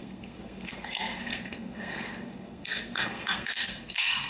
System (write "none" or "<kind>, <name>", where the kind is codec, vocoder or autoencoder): codec, SNAC